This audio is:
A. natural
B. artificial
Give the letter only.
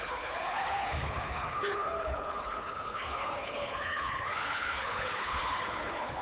B